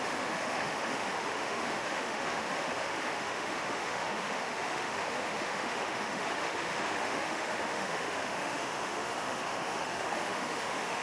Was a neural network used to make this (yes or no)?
yes